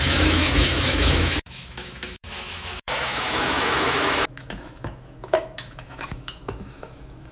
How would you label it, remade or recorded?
remade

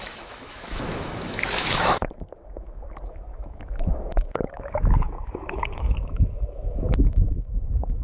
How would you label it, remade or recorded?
remade